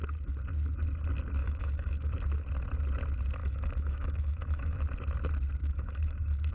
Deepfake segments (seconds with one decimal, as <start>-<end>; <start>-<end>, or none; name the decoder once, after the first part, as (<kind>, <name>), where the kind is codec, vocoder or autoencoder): 1.4-2.1 (autoencoder, DAC-VAE); 3.4-4.8; 5.6-6.5